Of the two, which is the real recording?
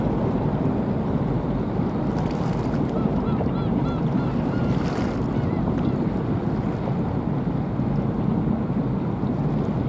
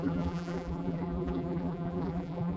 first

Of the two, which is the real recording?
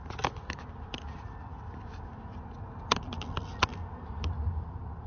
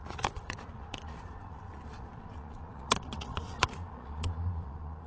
first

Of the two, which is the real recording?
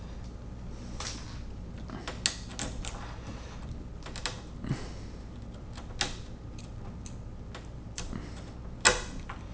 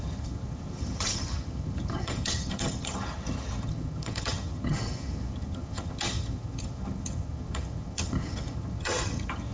first